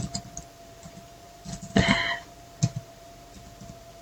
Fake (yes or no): no